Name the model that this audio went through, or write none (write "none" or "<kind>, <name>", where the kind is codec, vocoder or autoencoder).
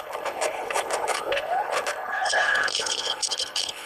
codec, HILCodec